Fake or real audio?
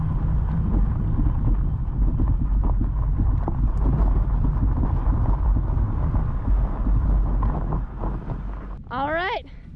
real